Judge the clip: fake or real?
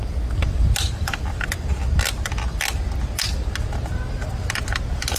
real